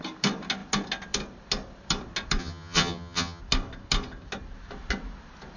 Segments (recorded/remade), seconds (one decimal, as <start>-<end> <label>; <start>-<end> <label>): 0.0-2.4 recorded; 2.4-3.4 remade; 3.4-5.6 recorded